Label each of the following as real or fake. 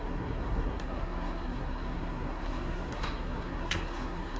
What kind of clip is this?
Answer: fake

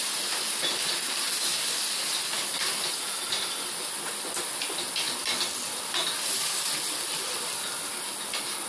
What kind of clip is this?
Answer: real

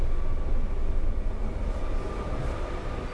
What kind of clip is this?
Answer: real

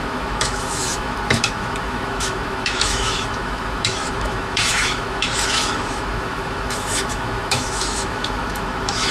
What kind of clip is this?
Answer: fake